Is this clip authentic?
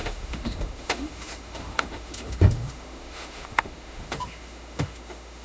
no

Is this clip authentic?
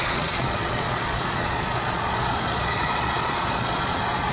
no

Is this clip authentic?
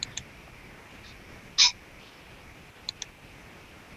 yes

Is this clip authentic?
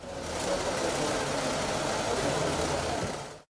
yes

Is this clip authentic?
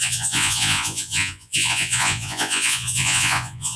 no